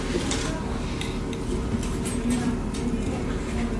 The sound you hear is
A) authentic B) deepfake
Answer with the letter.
A